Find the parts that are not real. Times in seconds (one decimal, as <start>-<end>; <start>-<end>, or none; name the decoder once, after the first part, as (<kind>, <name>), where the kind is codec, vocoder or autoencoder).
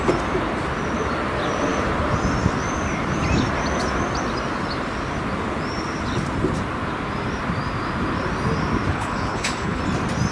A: 8.9-9.8 (codec, HILCodec)